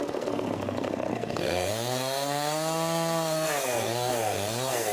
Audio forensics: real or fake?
fake